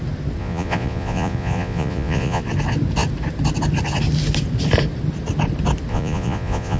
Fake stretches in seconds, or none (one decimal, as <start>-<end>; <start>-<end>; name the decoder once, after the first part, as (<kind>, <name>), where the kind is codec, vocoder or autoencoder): 0.4-2.4 (vocoder, Vocos); 5.9-6.8